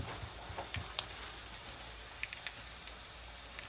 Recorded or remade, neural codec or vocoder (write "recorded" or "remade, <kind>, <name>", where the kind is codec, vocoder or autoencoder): recorded